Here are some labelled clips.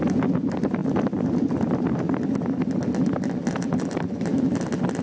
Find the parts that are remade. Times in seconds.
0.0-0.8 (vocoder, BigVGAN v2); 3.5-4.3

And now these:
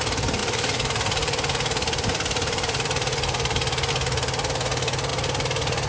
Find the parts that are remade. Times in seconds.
0.4-3.9 (vocoder, BigVGAN v2)

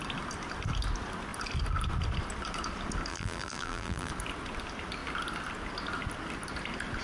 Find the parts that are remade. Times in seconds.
3.1-4.1 (vocoder, BigVGAN v2)

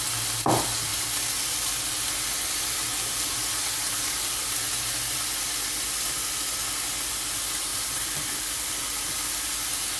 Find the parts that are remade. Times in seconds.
3.8-5.2 (vocoder, BigVGAN v2); 7.7-8.7

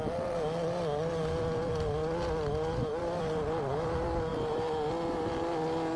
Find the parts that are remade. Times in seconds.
4.3-4.9 (vocoder, BigVGAN v2)

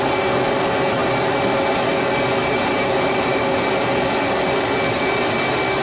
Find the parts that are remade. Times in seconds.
2.4-3.7 (vocoder, BigVGAN v2)